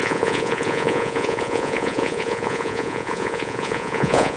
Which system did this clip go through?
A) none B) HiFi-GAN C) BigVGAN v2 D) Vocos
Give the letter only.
D